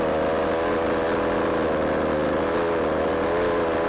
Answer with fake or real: real